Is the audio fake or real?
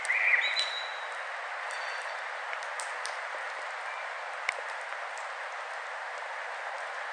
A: real